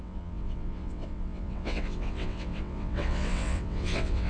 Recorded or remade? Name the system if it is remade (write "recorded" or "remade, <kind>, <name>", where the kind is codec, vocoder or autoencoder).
remade, vocoder, WaveNeXt